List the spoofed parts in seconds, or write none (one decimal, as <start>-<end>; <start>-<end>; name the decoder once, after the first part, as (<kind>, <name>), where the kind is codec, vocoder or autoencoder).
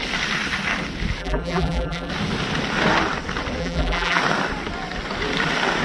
1.2-2.1 (vocoder, BigVGAN v2); 3.6-4.2